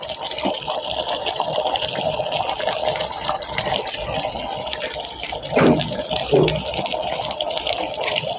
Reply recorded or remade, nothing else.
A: remade